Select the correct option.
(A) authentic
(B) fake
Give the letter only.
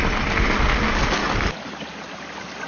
A